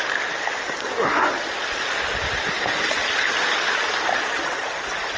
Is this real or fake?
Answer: real